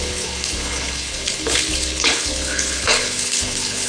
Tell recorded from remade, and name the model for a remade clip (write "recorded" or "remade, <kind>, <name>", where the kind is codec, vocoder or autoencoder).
remade, codec, HILCodec